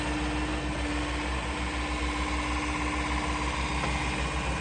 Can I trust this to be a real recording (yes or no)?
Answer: yes